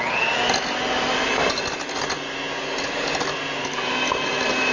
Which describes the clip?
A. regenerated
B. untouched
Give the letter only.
B